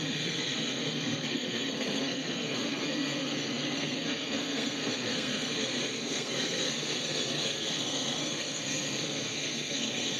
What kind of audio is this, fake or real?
fake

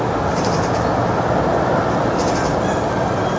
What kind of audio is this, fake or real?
real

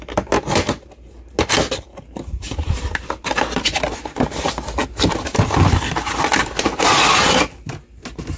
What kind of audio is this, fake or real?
real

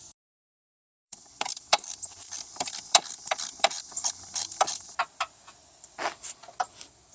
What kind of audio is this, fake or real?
fake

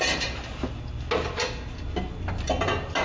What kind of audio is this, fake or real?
real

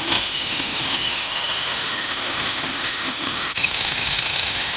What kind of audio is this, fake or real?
fake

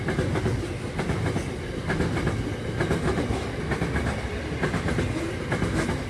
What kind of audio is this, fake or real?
real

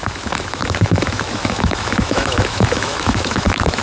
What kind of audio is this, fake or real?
fake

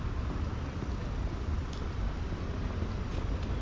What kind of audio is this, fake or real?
real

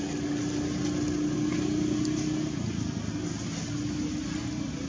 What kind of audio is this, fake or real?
real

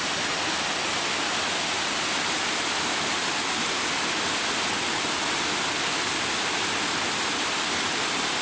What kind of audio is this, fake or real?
real